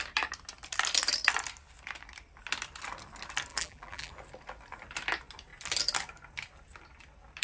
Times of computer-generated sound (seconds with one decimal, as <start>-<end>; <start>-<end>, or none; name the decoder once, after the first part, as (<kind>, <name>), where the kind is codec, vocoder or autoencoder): 3.5-4.1 (vocoder, BigVGAN v2)

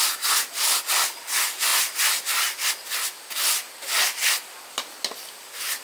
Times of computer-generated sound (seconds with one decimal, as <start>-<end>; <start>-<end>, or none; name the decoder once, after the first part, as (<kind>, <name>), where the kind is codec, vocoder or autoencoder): none

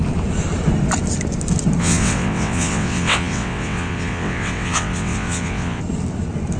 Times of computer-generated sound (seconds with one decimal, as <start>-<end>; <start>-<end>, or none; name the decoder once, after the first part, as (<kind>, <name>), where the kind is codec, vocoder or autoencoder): 1.8-5.8 (vocoder, WaveNeXt)

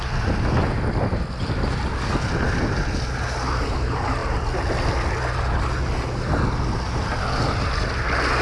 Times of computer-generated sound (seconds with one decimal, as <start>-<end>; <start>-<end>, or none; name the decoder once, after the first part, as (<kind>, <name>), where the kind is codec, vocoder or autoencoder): none

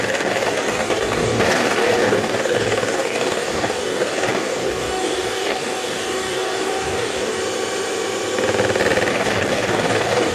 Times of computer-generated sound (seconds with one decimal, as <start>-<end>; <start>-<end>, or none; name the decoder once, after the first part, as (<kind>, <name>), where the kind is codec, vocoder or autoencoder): 0.0-7.4 (codec, DAC); 9.1-10.3